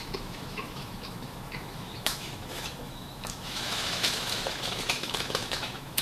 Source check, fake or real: fake